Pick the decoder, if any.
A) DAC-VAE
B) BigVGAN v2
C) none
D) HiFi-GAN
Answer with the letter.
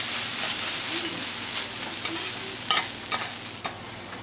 C